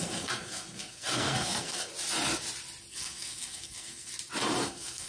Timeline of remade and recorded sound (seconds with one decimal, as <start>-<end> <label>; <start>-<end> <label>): 0.0-1.9 remade; 1.9-2.9 recorded; 2.9-4.1 remade; 4.1-4.6 recorded; 4.6-5.1 remade